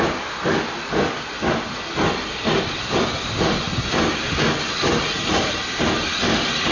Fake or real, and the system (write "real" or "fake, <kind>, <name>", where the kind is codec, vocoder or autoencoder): real